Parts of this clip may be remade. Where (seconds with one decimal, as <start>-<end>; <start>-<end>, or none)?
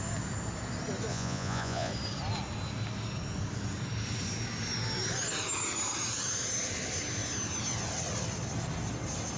1.1-1.9